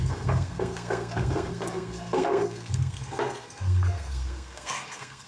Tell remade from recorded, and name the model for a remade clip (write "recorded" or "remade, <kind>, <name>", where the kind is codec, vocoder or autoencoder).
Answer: remade, codec, SNAC